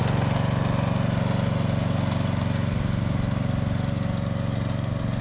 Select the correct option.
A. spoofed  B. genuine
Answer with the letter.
B